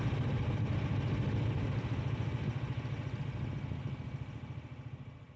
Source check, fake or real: real